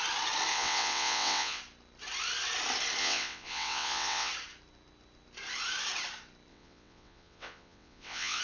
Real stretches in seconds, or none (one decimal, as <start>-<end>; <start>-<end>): 0.0-0.5; 1.6-3.0; 4.3-6.5